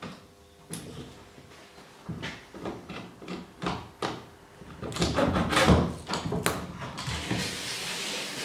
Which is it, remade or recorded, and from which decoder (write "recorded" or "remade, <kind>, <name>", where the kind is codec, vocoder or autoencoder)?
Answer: recorded